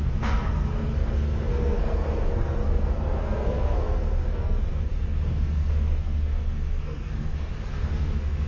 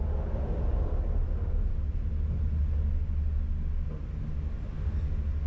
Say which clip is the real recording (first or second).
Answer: second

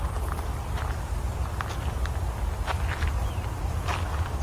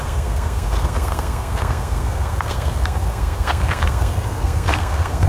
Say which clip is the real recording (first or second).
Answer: first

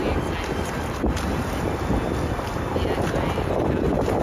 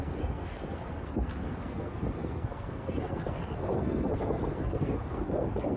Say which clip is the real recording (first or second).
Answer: first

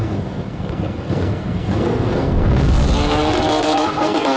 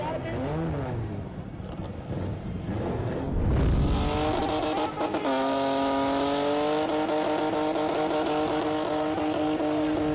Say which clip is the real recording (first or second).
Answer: second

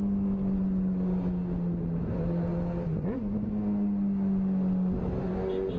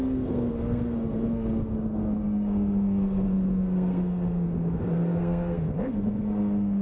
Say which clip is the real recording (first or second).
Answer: first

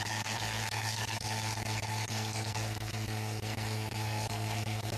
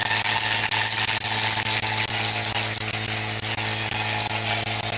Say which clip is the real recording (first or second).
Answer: second